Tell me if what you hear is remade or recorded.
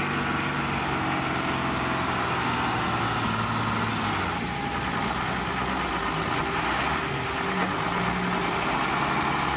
recorded